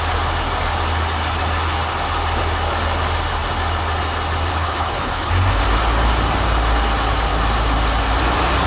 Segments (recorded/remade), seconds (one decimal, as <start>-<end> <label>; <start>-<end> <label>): 0.0-4.5 recorded; 4.5-5.3 remade; 5.3-8.7 recorded